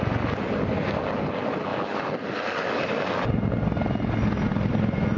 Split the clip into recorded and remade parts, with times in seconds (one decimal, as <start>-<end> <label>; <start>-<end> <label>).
0.0-5.2 recorded